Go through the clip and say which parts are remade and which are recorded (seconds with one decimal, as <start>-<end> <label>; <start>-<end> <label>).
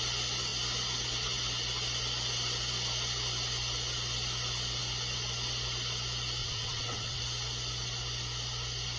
0.0-6.4 recorded; 6.4-7.2 remade; 7.2-9.0 recorded